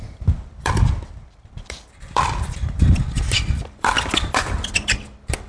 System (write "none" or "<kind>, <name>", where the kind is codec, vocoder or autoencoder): vocoder, BigVGAN v2